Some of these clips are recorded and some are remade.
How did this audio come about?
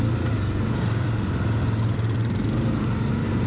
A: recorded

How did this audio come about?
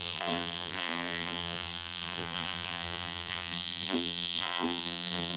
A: remade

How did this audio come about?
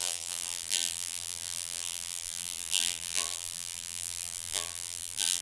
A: remade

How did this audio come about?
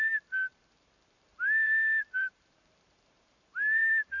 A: remade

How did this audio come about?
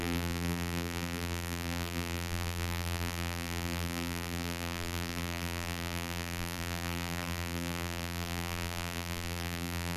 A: remade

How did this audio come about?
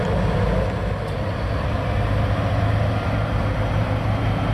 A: recorded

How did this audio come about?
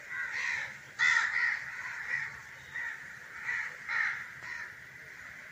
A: recorded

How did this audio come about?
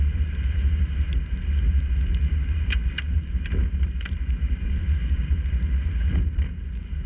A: remade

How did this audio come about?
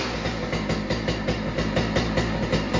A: recorded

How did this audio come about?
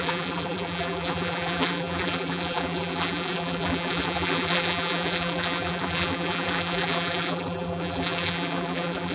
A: remade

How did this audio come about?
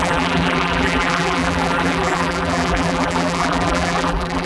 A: remade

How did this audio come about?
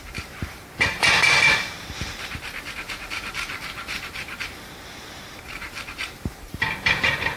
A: remade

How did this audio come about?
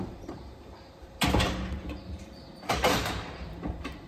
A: remade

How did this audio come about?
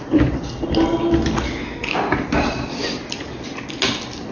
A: recorded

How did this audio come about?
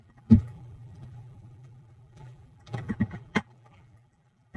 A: remade